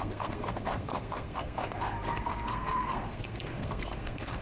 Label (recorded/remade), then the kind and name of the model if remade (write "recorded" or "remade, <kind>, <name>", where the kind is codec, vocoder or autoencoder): remade, codec, SNAC